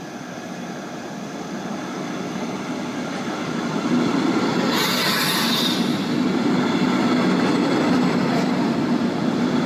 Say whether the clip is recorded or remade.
recorded